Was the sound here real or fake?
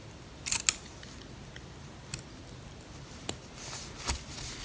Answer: real